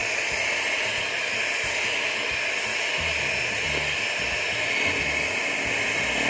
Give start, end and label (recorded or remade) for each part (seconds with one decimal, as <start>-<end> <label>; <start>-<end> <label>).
0.0-6.3 recorded

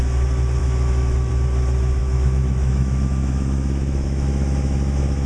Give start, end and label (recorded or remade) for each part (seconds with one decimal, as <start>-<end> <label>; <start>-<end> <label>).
0.0-0.6 recorded; 0.6-1.3 remade; 1.3-2.0 recorded; 2.0-5.3 remade

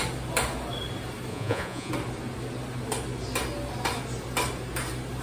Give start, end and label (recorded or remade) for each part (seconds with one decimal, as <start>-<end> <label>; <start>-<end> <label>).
0.0-1.3 recorded; 1.3-1.9 remade; 1.9-5.2 recorded